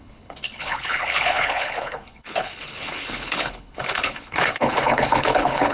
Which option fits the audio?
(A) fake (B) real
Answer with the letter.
A